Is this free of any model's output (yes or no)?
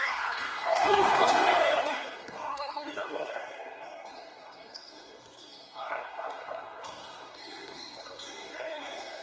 no